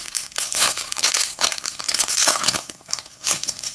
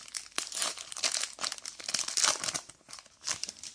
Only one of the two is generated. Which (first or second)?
first